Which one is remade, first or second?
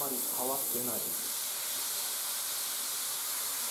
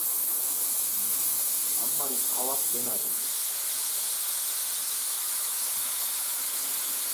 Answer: second